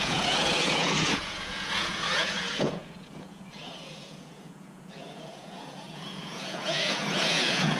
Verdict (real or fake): fake